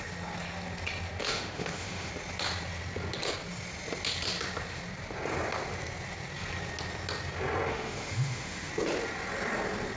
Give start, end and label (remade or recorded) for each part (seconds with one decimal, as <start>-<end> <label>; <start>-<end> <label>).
0.0-1.2 recorded; 1.2-2.1 remade; 2.1-7.7 recorded; 7.7-8.7 remade; 8.7-10.0 recorded

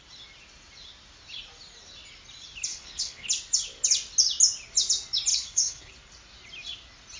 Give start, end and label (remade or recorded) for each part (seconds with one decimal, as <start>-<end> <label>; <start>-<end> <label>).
0.0-2.7 recorded; 2.7-3.3 remade; 3.3-5.3 recorded; 5.3-5.9 remade; 5.9-7.2 recorded

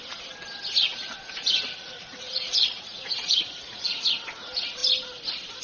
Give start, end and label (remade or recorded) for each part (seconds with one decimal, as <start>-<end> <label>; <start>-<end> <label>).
0.0-0.8 recorded; 0.8-4.2 remade; 4.2-5.6 recorded

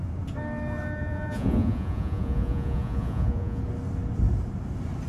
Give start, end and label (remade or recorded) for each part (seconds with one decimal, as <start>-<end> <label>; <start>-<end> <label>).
0.0-1.0 recorded; 1.0-3.6 remade; 3.6-5.1 recorded

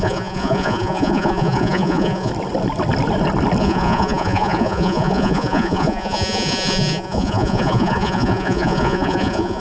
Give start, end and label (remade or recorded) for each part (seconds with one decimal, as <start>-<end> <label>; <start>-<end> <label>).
0.0-2.3 remade; 2.3-3.6 recorded; 3.6-9.6 remade

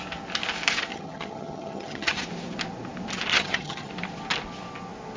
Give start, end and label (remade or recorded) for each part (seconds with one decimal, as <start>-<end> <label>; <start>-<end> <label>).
0.0-0.9 recorded; 0.9-2.2 remade; 2.2-3.3 recorded; 3.3-3.9 remade; 3.9-5.2 recorded